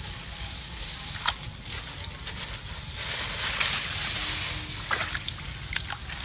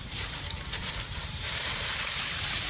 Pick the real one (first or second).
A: first